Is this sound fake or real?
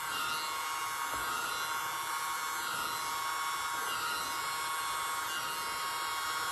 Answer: real